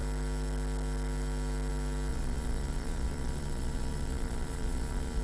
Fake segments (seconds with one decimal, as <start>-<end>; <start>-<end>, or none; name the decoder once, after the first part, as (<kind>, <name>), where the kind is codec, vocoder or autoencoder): 2.1-5.2 (vocoder, Vocos)